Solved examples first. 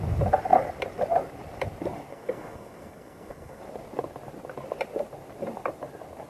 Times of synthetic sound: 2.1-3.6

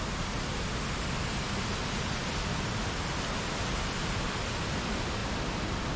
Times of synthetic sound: none

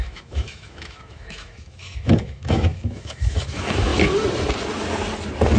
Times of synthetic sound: 0.0-3.9

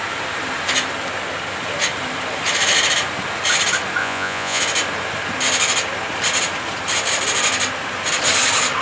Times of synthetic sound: 4.0-4.6

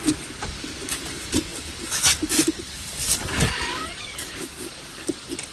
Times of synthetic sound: 0.0-5.5

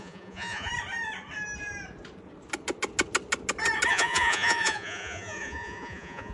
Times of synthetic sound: 0.0-0.7; 3.9-6.3

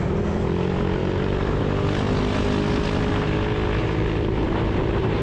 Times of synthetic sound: 1.0-1.6; 3.8-5.2

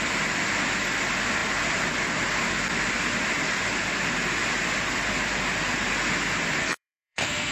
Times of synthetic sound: 6.6-7.5